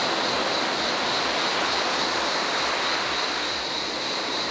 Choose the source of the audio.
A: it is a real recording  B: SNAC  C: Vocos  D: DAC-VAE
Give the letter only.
A